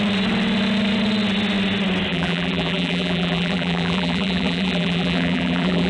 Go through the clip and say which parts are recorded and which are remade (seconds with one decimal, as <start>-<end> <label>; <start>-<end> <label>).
0.0-2.1 recorded; 2.1-5.9 remade

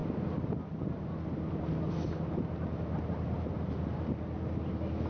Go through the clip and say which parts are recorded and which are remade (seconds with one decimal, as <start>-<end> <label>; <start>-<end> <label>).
0.0-3.1 remade; 3.1-5.1 recorded

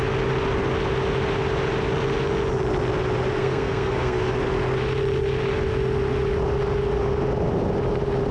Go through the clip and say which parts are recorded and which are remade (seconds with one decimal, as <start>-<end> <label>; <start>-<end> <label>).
0.0-3.4 recorded; 3.4-4.3 remade; 4.3-8.3 recorded

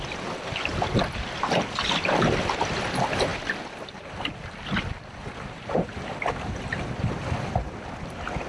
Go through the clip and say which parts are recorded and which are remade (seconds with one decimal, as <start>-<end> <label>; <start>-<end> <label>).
0.0-8.5 recorded